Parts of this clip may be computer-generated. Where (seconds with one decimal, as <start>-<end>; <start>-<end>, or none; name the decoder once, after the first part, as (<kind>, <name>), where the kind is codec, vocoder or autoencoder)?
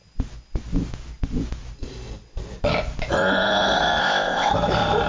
4.0-4.5 (codec, ZipCodec)